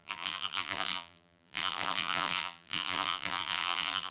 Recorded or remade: remade